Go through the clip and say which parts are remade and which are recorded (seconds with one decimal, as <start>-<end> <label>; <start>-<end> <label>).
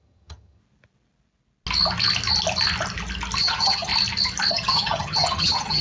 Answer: 0.0-0.6 remade; 0.6-3.4 recorded; 3.4-3.9 remade; 3.9-4.5 recorded; 4.5-5.8 remade